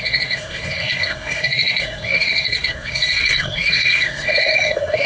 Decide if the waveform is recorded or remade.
remade